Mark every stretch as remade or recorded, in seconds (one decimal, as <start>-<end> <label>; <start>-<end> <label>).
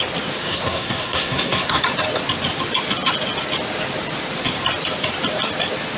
0.0-0.4 recorded; 0.4-1.8 remade; 1.8-6.0 recorded